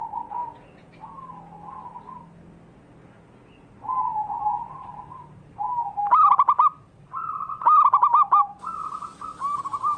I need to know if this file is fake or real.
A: real